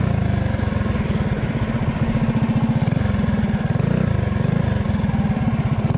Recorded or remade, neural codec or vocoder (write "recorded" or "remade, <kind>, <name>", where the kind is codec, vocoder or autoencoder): recorded